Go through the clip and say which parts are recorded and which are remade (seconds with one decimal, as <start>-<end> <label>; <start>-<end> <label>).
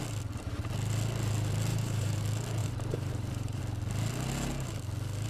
0.0-1.7 recorded; 1.7-2.2 remade; 2.2-2.6 recorded; 2.6-3.6 remade; 3.6-5.3 recorded